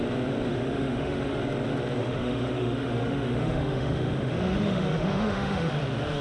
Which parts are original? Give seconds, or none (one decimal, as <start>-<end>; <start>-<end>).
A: 0.0-0.5; 1.4-2.0; 5.7-6.2